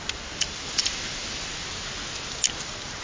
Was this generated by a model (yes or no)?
no